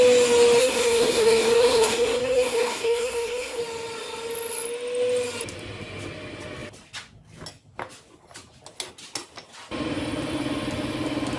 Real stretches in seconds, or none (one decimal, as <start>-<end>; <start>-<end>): 0.0-0.6; 3.6-11.4